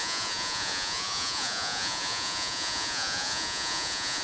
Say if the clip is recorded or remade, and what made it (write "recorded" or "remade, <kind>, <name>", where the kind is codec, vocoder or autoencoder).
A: remade, vocoder, Vocos